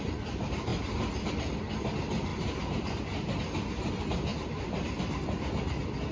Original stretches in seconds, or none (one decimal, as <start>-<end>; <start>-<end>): 0.0-2.3; 3.0-4.3; 5.0-6.1